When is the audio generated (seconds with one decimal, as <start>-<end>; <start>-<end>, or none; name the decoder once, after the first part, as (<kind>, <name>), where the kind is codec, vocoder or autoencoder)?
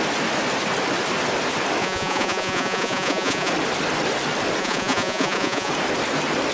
1.8-3.5 (vocoder, Vocos); 4.6-5.7